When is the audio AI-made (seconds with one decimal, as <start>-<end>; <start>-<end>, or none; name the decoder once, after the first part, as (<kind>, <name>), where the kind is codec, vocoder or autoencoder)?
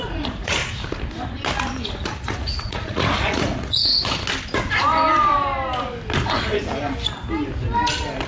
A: 0.0-0.6 (vocoder, Vocos); 2.4-3.9